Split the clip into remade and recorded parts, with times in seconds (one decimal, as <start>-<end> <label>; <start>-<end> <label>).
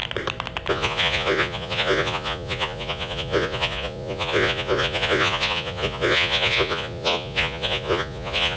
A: 0.0-0.7 recorded; 0.7-8.6 remade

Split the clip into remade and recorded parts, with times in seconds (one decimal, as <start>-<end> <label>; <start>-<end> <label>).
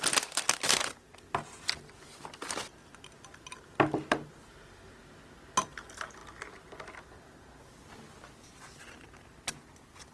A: 0.0-10.1 recorded